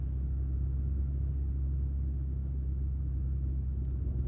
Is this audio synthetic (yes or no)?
no